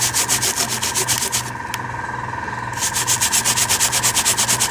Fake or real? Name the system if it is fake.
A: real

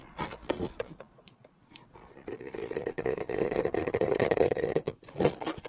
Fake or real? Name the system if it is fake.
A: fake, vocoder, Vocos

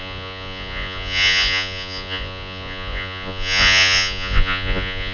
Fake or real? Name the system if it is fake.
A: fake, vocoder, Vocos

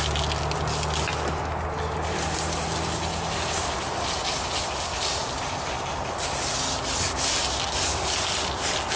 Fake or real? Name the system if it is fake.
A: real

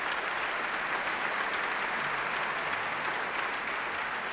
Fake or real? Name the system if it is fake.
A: real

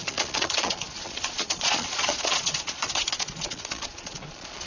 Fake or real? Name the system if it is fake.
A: fake, vocoder, Vocos